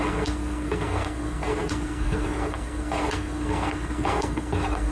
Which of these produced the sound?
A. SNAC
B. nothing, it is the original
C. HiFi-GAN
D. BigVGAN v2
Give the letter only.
A